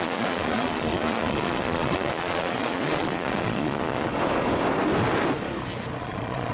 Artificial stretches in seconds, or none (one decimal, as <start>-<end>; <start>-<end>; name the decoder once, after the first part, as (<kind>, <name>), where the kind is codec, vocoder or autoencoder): 0.0-4.1 (vocoder, Vocos); 6.0-6.5